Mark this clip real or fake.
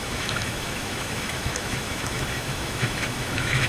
fake